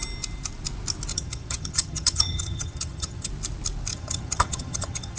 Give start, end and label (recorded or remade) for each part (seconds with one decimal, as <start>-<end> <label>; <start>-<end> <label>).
0.0-1.1 recorded; 1.1-3.3 remade; 3.3-3.9 recorded; 3.9-5.2 remade